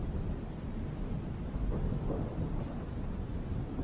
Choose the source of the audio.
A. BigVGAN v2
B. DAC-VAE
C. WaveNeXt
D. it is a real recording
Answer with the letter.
D